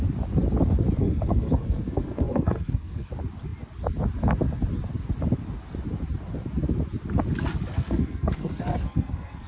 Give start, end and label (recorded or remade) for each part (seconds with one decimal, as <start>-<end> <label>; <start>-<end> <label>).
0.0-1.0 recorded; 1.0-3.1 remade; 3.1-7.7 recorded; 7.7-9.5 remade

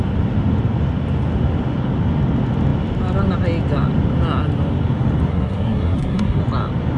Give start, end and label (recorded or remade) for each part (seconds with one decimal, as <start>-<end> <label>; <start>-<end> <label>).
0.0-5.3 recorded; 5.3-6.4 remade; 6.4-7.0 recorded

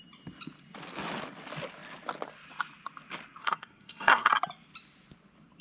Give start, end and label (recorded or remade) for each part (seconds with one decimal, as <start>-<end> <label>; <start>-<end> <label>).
0.0-3.4 recorded; 3.4-4.3 remade; 4.3-5.6 recorded